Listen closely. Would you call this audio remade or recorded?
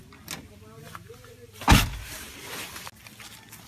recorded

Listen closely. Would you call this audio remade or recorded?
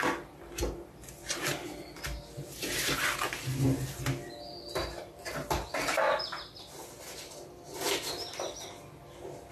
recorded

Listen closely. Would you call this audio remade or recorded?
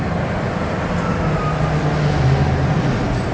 recorded